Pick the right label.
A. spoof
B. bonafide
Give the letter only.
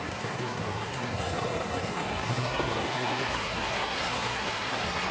A